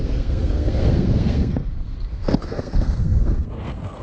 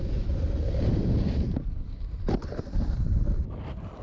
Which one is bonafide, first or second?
second